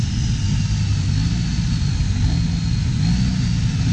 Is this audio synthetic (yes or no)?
no